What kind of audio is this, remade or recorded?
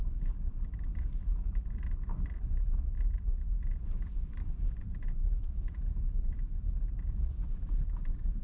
remade